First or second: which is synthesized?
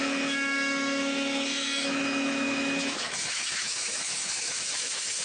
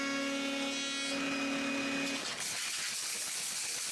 first